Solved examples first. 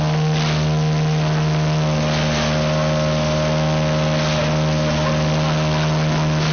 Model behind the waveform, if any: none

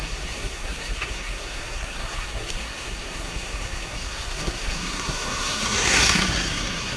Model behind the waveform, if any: codec, SNAC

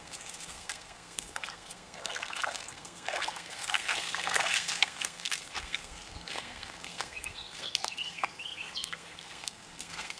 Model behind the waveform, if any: codec, SNAC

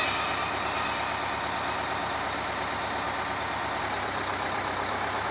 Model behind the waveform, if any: none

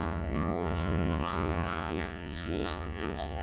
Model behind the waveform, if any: vocoder, Vocos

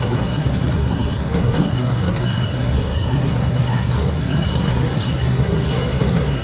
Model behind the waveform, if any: codec, SNAC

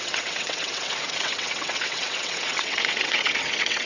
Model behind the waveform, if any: vocoder, WaveNeXt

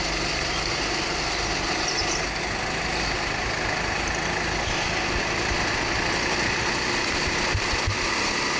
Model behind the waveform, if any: none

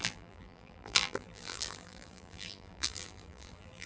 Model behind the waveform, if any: vocoder, BigVGAN v2